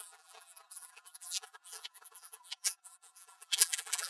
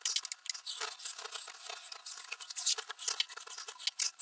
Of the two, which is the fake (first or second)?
first